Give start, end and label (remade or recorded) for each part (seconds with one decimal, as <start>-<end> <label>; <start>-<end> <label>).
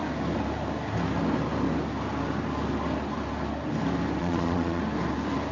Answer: 0.0-4.2 recorded; 4.2-4.8 remade; 4.8-5.5 recorded